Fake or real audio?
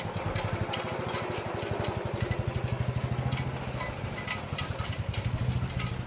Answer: real